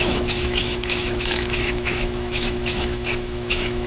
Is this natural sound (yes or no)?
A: no